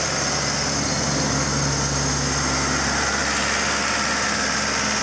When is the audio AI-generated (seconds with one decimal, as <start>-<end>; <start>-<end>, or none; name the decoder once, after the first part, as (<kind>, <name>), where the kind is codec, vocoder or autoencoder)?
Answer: none